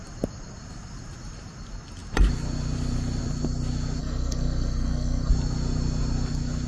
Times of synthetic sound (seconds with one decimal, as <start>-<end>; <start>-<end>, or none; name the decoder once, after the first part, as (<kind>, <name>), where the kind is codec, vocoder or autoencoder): 4.0-5.3 (codec, SNAC)